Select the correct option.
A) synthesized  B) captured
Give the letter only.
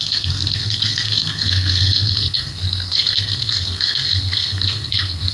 A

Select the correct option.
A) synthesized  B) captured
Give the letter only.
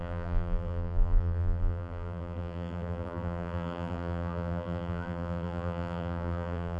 A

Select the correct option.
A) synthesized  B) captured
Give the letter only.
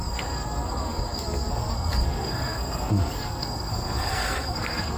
A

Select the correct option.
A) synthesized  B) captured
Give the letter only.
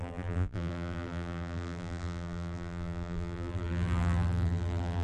A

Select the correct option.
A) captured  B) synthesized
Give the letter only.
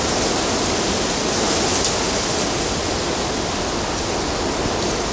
A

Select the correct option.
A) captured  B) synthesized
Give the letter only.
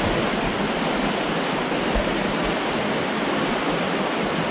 A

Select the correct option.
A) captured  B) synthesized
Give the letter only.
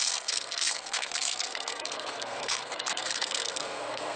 B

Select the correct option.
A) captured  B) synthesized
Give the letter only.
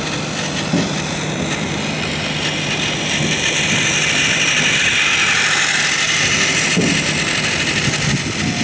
A